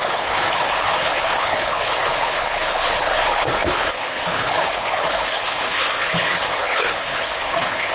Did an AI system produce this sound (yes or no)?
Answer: yes